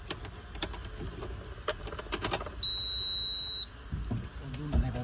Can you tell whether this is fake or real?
real